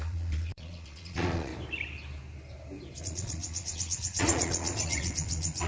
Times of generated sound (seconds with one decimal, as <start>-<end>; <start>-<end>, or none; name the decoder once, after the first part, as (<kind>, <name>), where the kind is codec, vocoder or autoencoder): 0.0-1.5 (vocoder, Vocos); 3.0-5.7